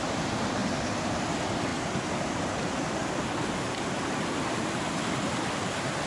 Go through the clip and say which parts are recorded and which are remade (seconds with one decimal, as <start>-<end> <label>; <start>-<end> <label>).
0.0-0.6 recorded; 0.6-1.2 remade; 1.2-6.1 recorded